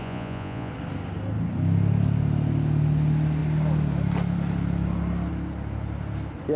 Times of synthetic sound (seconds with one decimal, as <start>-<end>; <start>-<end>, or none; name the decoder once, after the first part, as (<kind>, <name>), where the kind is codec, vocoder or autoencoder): 0.0-0.7 (vocoder, Vocos)

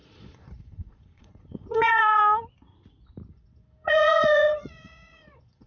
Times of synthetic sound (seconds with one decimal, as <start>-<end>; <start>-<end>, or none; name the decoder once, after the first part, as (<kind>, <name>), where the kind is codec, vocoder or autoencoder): 0.0-2.2 (vocoder, Vocos); 3.3-5.7

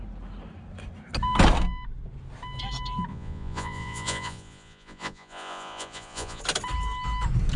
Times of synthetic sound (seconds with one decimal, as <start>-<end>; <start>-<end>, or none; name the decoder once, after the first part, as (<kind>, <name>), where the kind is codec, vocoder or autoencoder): 3.1-6.4 (vocoder, Vocos)

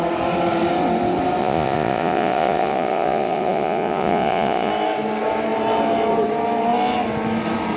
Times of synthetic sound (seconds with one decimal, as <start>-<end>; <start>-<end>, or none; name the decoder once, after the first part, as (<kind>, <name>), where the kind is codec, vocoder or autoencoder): 1.4-4.7 (vocoder, Vocos)

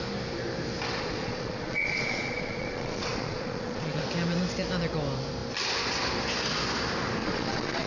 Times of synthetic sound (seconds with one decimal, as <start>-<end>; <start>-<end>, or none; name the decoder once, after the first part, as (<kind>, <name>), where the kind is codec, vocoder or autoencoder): 1.0-4.0 (vocoder, Vocos); 7.2-7.9

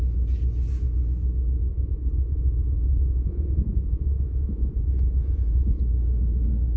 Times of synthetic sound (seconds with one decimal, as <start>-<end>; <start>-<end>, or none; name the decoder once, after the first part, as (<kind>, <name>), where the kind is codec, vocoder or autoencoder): 1.7-5.8 (vocoder, Vocos)

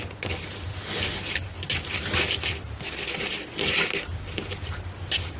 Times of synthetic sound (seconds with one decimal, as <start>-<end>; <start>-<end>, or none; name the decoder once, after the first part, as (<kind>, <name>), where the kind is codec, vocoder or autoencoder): none

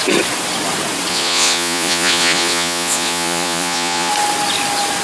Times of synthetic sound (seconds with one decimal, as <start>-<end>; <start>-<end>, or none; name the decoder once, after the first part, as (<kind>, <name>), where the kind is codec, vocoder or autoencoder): 1.1-4.1 (vocoder, Vocos)